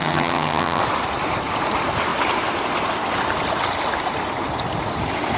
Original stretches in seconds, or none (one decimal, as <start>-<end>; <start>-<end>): 0.8-5.4